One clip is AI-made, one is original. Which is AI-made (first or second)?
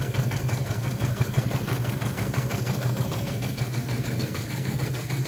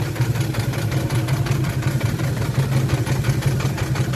first